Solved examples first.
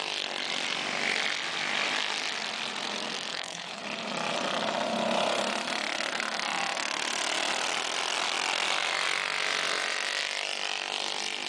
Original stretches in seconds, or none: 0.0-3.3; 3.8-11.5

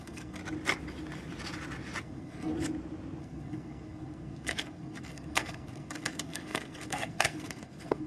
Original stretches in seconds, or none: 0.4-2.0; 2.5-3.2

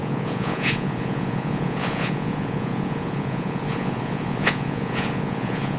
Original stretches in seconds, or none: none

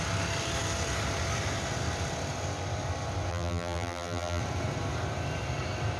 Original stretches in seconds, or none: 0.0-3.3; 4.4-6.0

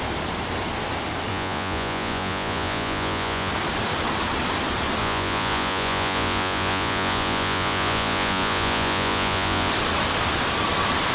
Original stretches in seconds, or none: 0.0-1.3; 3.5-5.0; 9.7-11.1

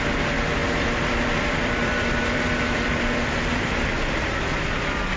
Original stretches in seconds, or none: 0.0-0.6; 3.7-5.2